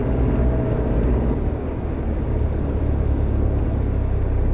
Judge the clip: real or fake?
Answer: fake